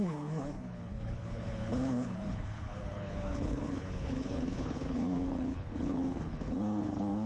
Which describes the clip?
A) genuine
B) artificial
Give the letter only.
B